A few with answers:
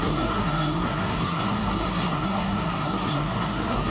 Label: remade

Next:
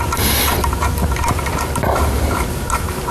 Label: remade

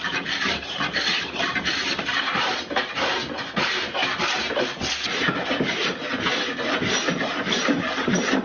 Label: remade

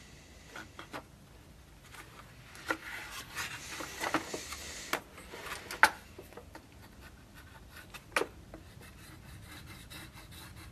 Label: recorded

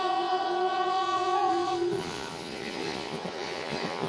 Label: remade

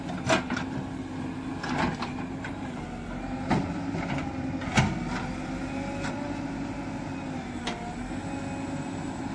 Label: recorded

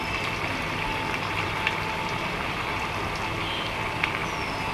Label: recorded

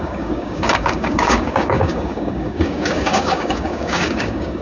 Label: remade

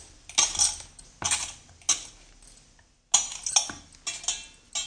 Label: recorded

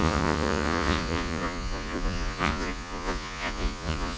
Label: remade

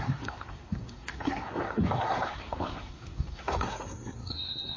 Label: remade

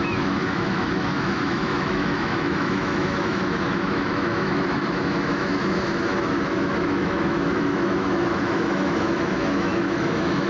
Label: remade